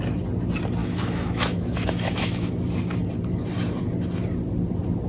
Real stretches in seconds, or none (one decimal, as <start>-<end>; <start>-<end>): 0.0-0.8; 2.5-5.1